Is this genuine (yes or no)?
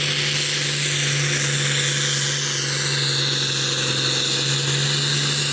yes